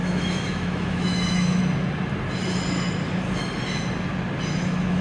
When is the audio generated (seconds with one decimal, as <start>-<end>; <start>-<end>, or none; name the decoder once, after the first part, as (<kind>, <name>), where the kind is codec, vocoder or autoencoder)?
0.0-1.6 (autoencoder, DAC-VAE); 4.6-5.0